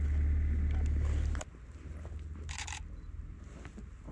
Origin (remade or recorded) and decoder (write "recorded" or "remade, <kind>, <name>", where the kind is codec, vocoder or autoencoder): recorded